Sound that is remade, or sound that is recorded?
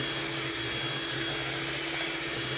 recorded